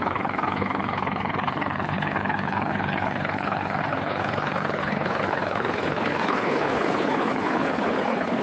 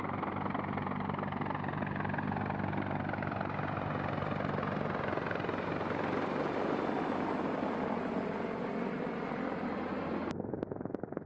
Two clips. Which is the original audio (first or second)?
second